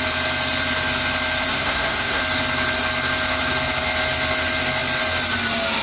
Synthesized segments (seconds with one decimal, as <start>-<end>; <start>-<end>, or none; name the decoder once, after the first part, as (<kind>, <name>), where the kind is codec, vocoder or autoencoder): 1.5-2.2 (codec, SNAC)